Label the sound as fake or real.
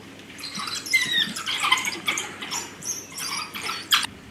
fake